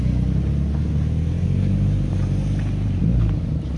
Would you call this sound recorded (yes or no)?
yes